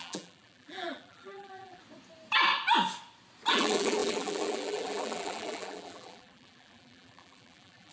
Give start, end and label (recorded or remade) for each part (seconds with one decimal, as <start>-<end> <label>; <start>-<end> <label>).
0.0-1.8 remade; 1.8-3.5 recorded; 3.5-7.9 remade